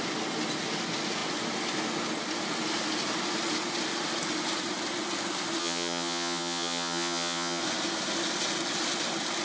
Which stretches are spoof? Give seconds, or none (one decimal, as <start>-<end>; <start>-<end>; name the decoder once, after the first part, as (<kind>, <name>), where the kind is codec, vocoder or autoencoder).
5.6-7.6 (vocoder, HiFi-GAN)